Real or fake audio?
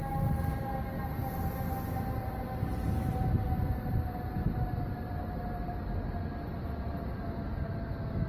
real